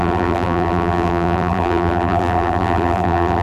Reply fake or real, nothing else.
fake